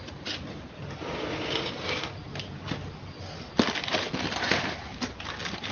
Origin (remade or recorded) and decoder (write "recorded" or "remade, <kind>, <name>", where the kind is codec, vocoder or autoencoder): recorded